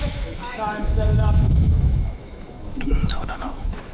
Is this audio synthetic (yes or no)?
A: yes